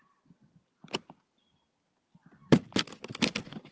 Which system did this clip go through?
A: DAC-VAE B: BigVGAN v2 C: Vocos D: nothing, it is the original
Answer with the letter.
D